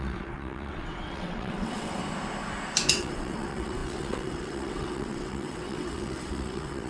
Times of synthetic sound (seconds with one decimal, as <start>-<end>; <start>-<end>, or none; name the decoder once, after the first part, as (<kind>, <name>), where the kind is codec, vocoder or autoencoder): 0.0-2.0 (vocoder, WaveNeXt); 2.9-6.9